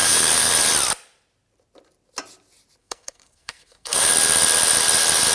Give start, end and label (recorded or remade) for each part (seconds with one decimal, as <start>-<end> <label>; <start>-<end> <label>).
0.0-0.5 remade; 0.5-2.8 recorded; 2.8-4.1 remade; 4.1-5.3 recorded